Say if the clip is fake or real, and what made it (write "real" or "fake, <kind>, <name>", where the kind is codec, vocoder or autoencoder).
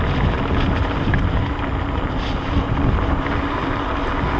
real